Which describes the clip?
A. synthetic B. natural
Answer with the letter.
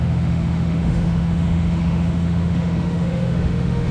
A